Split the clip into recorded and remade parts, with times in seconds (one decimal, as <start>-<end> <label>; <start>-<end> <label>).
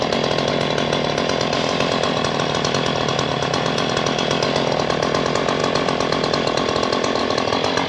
0.0-5.6 recorded; 5.6-7.2 remade; 7.2-7.9 recorded